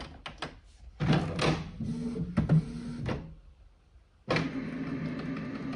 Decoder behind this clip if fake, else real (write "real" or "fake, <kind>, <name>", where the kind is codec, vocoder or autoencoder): real